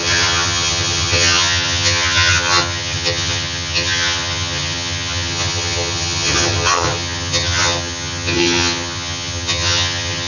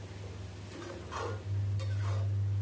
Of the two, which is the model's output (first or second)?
first